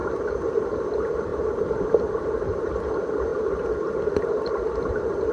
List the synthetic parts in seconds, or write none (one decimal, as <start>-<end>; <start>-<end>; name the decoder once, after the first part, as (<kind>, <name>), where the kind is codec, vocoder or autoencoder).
0.0-0.8 (vocoder, BigVGAN v2); 1.3-2.9; 3.3-4.5